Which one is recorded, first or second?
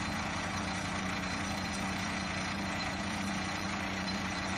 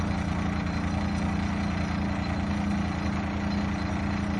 second